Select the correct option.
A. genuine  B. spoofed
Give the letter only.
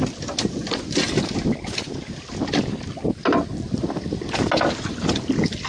A